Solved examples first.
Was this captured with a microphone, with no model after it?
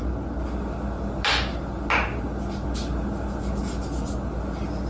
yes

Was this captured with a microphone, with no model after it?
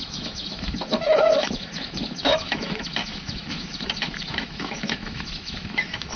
no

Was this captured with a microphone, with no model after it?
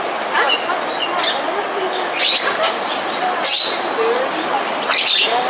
yes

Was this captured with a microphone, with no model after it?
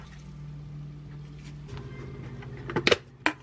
yes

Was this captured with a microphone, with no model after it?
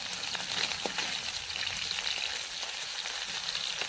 yes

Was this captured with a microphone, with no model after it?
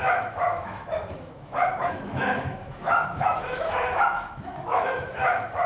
no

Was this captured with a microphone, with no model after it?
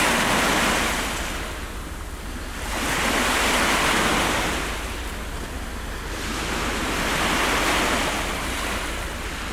yes